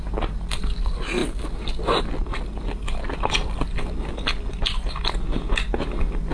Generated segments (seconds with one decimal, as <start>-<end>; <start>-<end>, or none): none